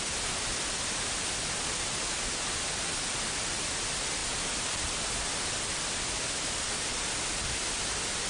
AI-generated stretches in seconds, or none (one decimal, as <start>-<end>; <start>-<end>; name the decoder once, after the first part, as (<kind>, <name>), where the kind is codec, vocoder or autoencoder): none

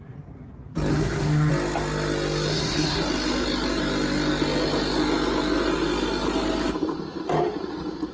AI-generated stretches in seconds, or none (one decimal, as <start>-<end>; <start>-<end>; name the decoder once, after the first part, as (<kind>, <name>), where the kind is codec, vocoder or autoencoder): 0.9-1.5 (codec, SNAC); 2.5-3.0